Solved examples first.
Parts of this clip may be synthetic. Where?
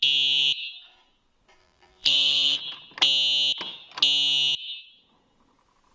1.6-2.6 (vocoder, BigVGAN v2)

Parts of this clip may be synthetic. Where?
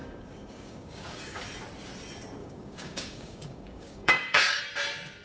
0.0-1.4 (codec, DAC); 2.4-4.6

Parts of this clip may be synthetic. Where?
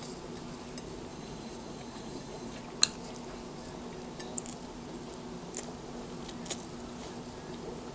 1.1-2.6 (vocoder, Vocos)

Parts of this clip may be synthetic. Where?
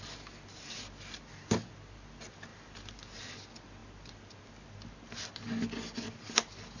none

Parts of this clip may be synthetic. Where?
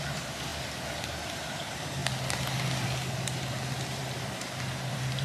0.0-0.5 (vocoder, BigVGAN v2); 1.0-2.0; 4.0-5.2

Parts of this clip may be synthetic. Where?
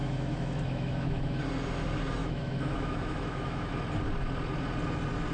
0.0-1.4 (autoencoder, DAC-VAE); 2.2-3.7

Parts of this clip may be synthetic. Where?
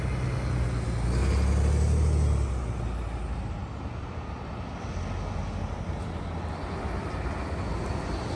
none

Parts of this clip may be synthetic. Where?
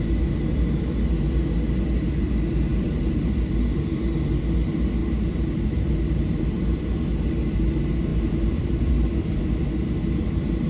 2.7-3.3 (vocoder, BigVGAN v2); 5.0-6.4; 8.1-9.4